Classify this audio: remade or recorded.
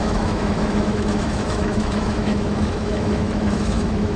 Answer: remade